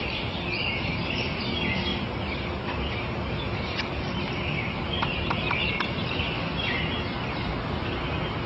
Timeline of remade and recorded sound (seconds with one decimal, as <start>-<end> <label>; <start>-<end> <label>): 0.0-8.5 recorded